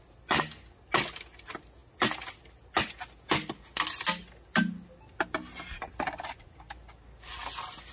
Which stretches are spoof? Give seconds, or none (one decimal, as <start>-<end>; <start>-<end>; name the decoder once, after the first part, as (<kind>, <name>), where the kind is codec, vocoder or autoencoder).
none